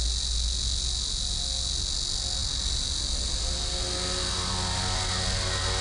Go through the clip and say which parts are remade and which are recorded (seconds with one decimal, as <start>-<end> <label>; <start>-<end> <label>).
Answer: 0.0-5.8 recorded